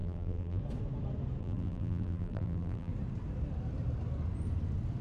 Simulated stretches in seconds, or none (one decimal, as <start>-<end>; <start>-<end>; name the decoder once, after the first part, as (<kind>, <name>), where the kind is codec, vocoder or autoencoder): 0.0-0.6 (vocoder, BigVGAN v2); 1.4-2.9